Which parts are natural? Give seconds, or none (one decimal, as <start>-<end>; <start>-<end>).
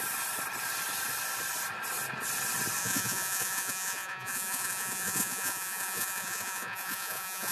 0.0-2.8